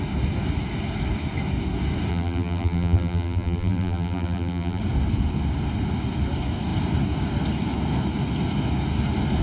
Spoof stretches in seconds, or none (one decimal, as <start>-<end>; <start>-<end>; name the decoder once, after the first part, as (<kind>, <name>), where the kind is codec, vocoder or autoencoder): 2.1-4.8 (vocoder, BigVGAN v2)